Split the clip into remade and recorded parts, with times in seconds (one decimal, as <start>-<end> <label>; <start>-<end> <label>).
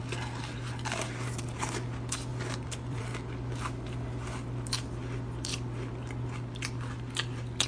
0.0-2.3 recorded; 2.3-3.0 remade; 3.0-7.7 recorded